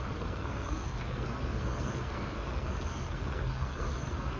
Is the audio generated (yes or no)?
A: yes